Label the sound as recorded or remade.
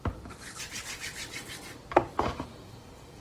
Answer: remade